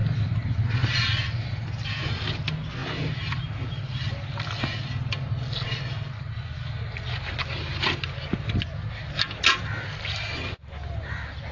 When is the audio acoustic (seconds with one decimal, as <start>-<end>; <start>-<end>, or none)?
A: 0.0-11.5